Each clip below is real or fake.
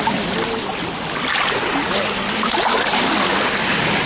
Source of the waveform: real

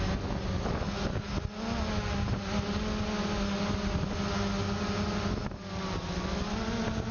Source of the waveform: real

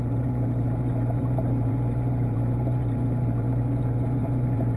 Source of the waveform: fake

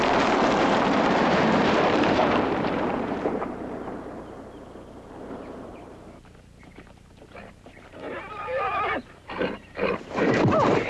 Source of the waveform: fake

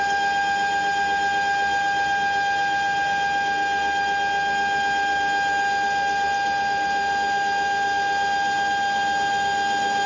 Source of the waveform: real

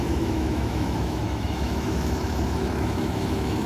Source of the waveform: fake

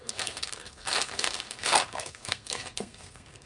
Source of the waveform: fake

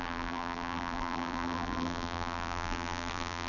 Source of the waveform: fake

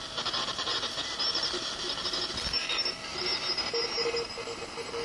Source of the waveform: real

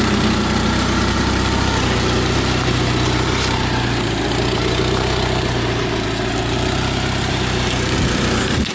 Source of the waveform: fake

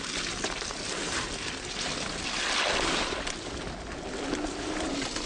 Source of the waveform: real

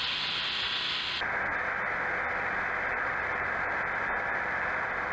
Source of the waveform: real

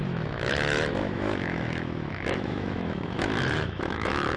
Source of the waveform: fake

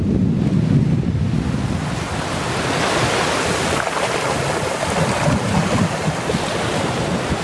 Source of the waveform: real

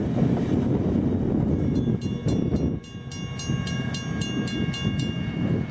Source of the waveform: real